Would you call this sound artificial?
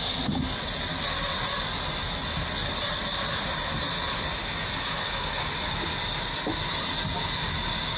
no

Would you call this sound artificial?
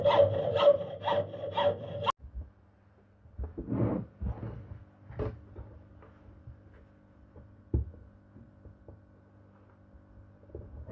no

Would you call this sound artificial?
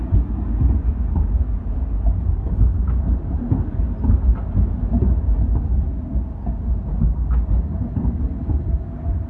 no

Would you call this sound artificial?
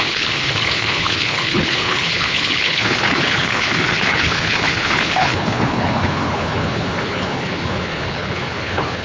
yes